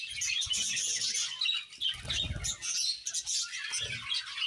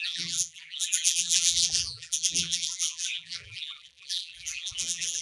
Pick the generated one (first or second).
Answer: second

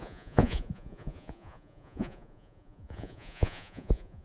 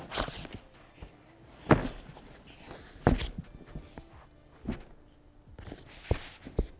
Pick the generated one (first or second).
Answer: first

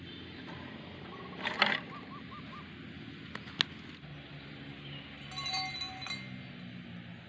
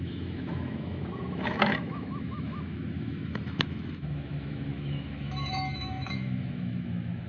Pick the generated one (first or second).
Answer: second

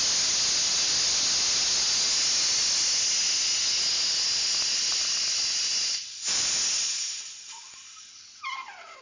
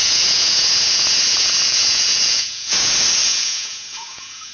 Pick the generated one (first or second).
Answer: second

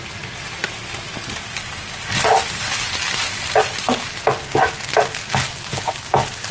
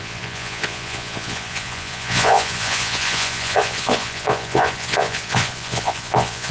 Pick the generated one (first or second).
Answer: second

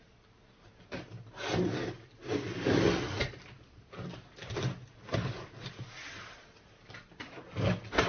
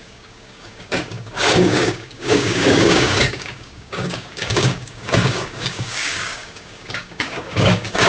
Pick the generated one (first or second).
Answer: second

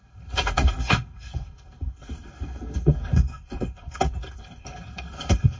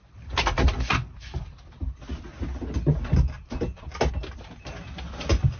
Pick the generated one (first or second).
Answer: first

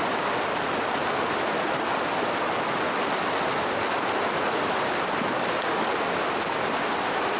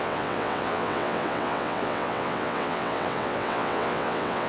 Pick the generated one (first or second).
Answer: second